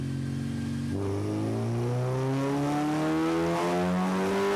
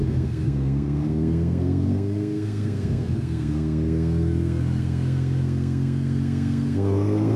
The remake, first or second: second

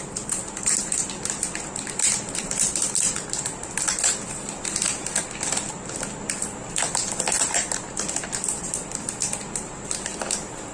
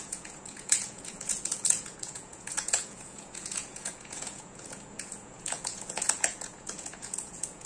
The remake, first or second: second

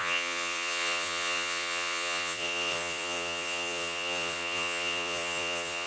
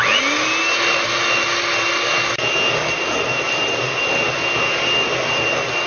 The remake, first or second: first